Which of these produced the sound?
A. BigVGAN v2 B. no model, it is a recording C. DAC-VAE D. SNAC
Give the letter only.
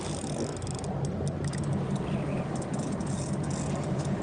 B